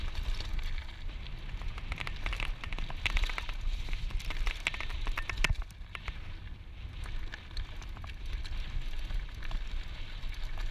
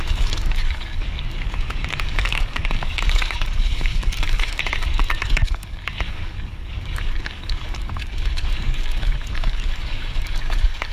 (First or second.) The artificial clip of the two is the second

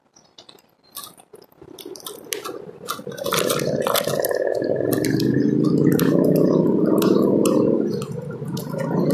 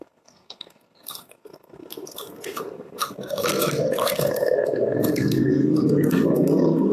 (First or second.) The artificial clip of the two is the second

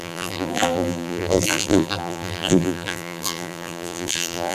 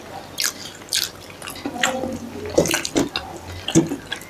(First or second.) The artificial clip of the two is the first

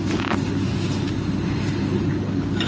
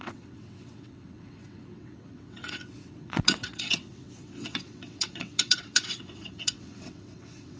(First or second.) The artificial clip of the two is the second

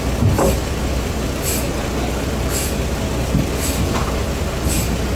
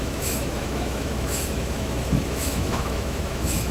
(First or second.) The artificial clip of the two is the second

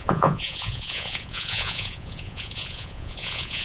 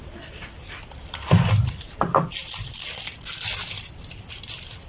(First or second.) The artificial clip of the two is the first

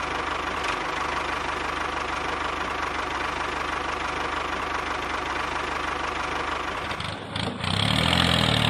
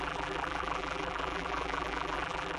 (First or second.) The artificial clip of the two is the second